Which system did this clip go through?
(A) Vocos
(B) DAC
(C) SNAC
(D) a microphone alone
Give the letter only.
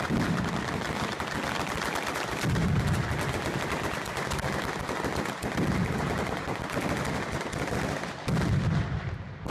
D